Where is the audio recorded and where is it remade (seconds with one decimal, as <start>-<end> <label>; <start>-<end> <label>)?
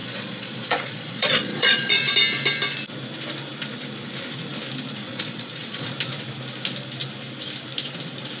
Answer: 0.0-2.1 remade; 2.1-5.1 recorded; 5.1-5.9 remade; 5.9-8.4 recorded